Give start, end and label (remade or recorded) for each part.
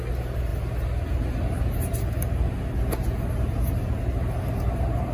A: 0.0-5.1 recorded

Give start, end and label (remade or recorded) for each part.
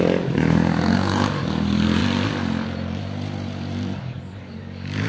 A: 0.0-2.0 remade; 2.0-4.0 recorded; 4.0-5.1 remade